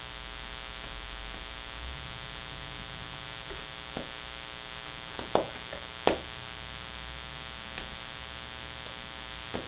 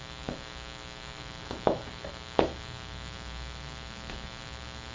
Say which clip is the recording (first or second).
first